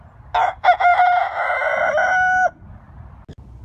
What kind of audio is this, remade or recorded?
recorded